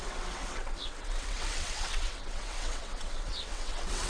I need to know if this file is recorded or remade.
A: remade